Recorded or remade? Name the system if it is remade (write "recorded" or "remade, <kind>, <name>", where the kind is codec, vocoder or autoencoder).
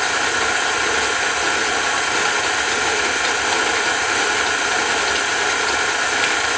recorded